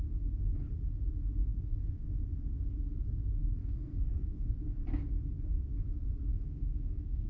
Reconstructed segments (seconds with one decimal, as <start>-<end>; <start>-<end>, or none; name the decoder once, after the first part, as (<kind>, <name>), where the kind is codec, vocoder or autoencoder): 1.5-2.1 (codec, SNAC); 3.6-4.5; 6.3-7.3